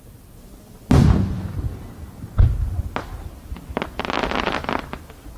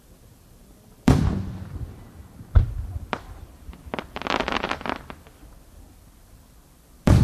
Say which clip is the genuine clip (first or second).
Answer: first